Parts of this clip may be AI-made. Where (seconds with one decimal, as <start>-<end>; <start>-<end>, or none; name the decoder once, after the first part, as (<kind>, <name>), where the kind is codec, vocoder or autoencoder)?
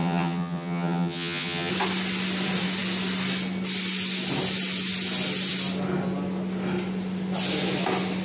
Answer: 0.0-1.7 (vocoder, HiFi-GAN)